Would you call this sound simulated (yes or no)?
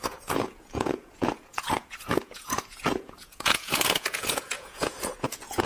yes